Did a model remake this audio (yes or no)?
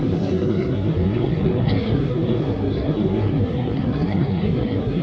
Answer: yes